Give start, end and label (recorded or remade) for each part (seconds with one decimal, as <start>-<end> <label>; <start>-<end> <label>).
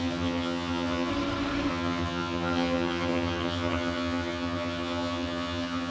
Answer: 0.0-1.1 remade; 1.1-1.7 recorded; 1.7-5.9 remade